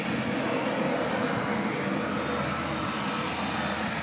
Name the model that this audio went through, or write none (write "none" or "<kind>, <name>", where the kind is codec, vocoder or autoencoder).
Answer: none